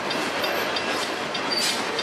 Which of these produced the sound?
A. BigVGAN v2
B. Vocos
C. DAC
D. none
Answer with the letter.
D